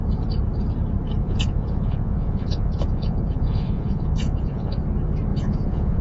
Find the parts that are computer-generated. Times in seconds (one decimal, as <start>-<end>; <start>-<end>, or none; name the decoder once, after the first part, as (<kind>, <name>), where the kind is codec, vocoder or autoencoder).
1.2-4.8 (vocoder, Vocos); 5.3-6.0